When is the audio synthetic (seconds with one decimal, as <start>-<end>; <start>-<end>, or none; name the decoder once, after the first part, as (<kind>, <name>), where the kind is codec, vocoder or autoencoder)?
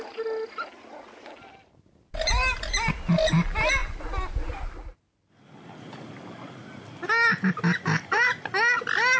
none